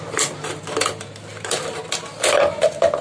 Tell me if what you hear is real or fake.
real